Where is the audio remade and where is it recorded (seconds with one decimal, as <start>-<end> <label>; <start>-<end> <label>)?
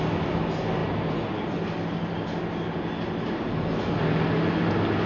0.0-5.1 recorded